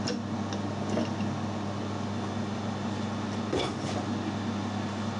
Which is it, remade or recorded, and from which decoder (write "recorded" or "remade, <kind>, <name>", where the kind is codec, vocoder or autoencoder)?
recorded